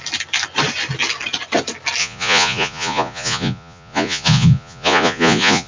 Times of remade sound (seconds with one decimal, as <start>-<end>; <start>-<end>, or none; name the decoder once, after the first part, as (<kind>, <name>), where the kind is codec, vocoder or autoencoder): 2.0-5.7 (vocoder, Vocos)